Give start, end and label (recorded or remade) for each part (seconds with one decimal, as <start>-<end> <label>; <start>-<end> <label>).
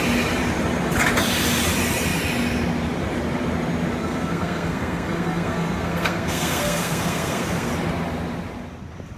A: 0.0-4.0 recorded; 4.0-7.7 remade; 7.7-9.2 recorded